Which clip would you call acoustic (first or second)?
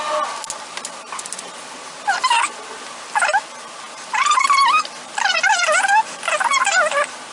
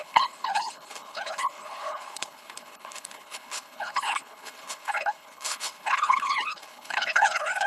first